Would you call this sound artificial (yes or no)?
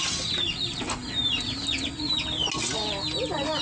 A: no